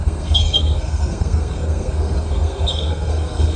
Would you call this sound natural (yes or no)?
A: no